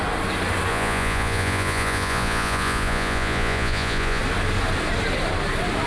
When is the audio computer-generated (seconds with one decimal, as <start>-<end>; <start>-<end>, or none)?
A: 0.7-4.2